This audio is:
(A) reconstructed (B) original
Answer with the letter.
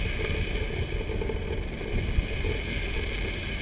B